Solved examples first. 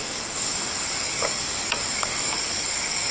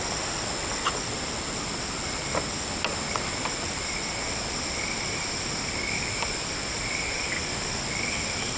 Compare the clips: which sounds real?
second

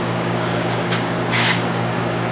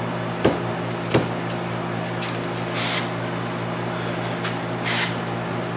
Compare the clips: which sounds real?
second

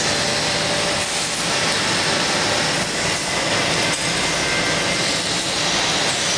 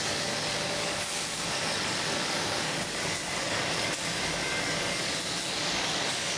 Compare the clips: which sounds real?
first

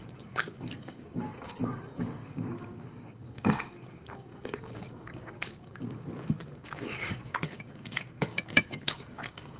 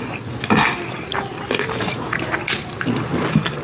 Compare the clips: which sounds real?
second